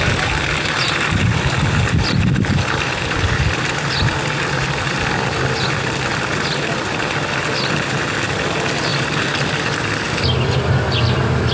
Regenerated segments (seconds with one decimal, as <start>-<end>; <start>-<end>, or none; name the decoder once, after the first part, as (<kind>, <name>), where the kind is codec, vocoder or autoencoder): none